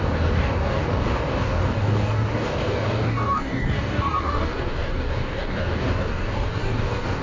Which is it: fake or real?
fake